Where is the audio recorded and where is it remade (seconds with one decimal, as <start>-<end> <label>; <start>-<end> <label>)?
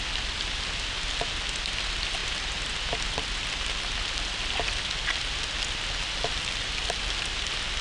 0.0-7.8 recorded